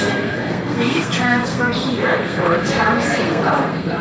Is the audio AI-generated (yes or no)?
yes